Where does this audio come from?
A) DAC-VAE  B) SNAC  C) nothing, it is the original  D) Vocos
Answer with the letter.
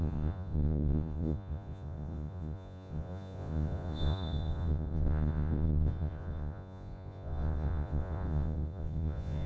D